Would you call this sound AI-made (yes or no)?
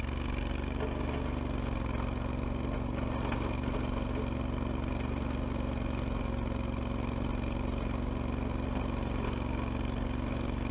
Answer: no